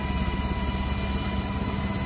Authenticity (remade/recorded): recorded